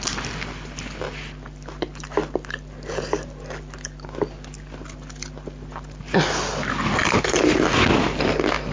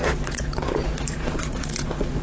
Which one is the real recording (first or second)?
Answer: first